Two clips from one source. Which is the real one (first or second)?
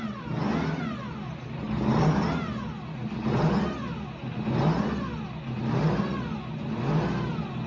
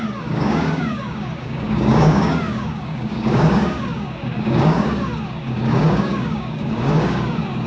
first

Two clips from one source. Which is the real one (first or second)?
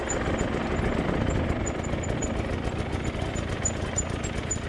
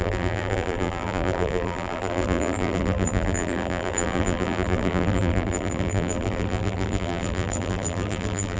first